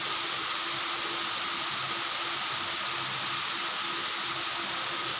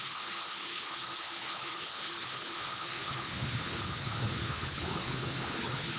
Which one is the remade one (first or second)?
second